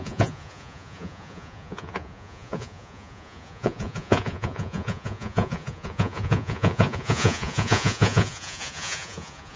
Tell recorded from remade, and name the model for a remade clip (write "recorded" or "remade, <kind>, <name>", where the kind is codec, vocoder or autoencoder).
remade, vocoder, Vocos